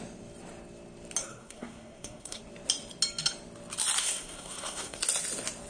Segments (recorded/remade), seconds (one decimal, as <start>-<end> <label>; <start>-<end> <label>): 0.0-1.2 recorded; 1.2-2.4 remade; 2.4-4.0 recorded; 4.0-5.0 remade; 5.0-5.7 recorded